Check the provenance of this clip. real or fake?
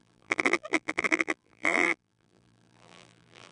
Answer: fake